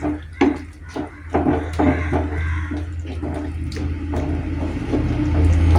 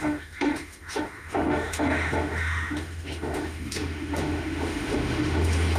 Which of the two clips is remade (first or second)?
second